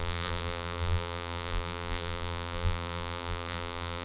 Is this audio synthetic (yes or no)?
yes